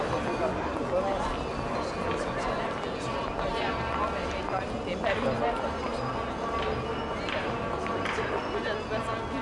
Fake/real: real